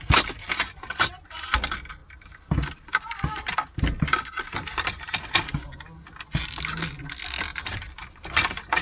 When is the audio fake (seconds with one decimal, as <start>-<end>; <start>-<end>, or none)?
7.5-8.2